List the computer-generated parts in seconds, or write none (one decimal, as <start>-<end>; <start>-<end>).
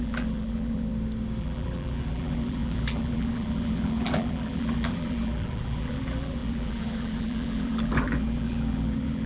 0.0-0.9; 1.4-9.3